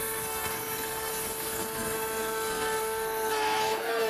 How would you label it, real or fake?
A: fake